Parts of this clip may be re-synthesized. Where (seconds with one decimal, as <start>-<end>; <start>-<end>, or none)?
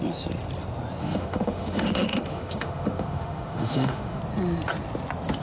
1.0-4.2